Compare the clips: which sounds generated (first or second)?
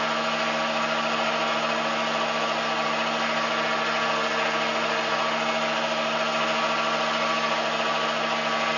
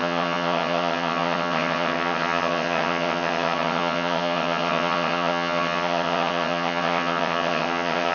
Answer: second